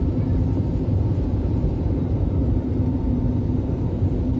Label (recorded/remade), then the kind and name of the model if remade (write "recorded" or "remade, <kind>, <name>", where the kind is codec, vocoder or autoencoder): remade, vocoder, BigVGAN v2